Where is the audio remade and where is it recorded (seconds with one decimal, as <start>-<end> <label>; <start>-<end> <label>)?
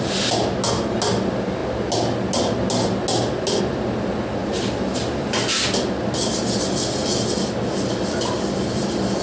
0.0-4.4 recorded; 4.4-9.2 remade